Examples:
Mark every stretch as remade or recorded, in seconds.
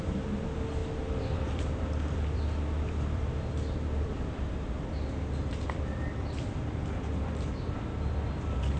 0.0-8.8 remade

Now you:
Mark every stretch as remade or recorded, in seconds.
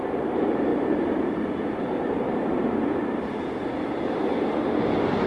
0.0-4.3 remade; 4.3-5.3 recorded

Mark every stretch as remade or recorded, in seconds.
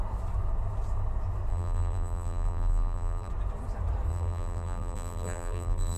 0.0-1.5 recorded; 1.5-3.3 remade; 3.3-4.1 recorded; 4.1-6.0 remade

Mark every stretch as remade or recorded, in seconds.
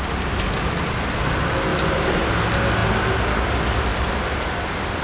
0.0-1.7 recorded; 1.7-2.3 remade; 2.3-5.0 recorded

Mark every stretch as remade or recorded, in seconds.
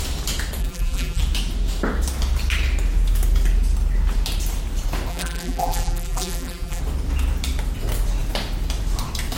0.0-0.6 recorded; 0.6-1.2 remade; 1.2-5.1 recorded; 5.1-6.8 remade; 6.8-9.4 recorded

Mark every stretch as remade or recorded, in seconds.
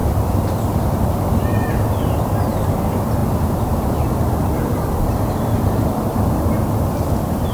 0.0-1.7 remade; 1.7-3.2 recorded; 3.2-6.1 remade; 6.1-7.5 recorded